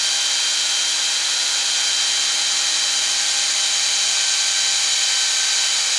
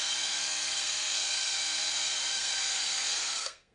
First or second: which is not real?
second